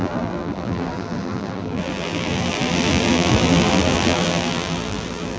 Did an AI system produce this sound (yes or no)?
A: yes